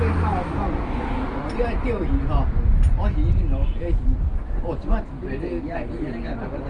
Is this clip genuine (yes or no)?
yes